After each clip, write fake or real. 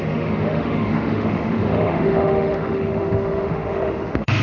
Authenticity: fake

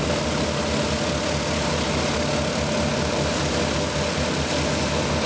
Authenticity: real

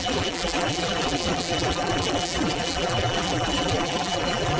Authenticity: fake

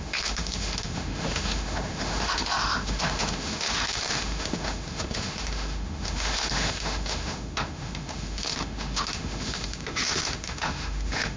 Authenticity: fake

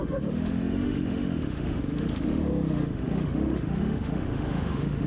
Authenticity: fake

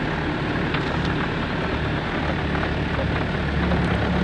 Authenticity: real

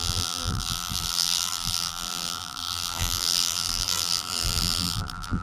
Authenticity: fake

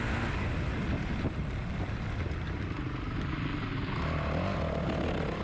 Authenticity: real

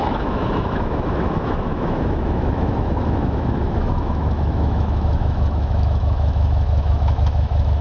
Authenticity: fake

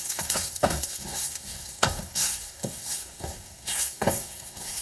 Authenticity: fake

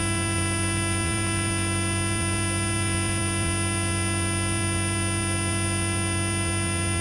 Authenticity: real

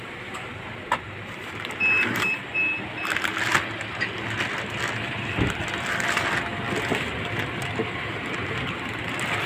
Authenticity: real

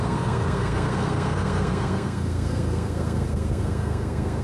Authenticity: fake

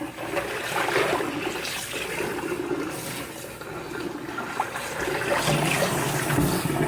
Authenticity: real